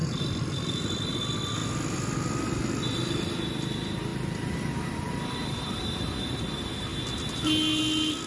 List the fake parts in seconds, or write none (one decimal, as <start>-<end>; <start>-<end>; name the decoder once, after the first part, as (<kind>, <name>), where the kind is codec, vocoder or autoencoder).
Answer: 0.0-0.7 (vocoder, BigVGAN v2); 1.6-3.3; 4.1-6.4